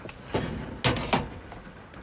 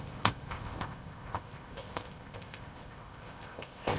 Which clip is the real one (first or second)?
first